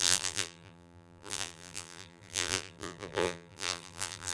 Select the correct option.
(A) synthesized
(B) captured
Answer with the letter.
A